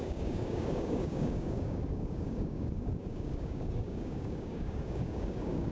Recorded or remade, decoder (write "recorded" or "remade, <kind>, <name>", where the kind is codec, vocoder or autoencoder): remade, codec, DAC